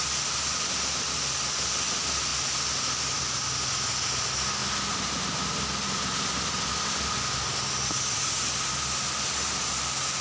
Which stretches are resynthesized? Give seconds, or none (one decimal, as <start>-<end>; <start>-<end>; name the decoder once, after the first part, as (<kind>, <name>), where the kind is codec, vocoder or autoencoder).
none